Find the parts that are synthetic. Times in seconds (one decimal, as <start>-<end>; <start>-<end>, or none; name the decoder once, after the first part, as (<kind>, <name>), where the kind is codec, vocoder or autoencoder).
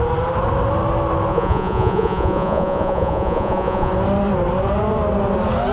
1.3-3.9 (vocoder, Vocos)